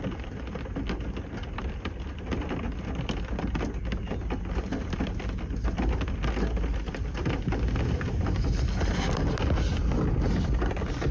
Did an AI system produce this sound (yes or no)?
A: no